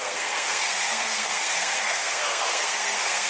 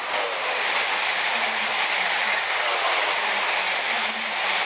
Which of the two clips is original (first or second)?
second